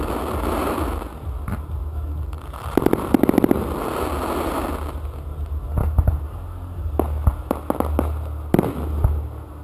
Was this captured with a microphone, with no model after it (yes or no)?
yes